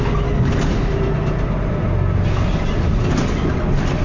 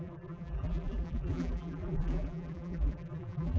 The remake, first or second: second